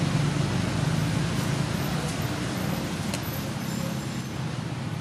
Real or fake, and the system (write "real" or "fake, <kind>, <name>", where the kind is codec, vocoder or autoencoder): real